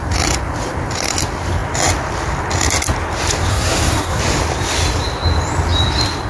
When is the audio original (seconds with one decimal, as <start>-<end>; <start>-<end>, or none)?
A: 0.0-3.5; 4.2-6.3